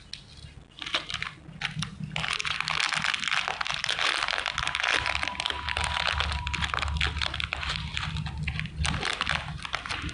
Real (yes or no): yes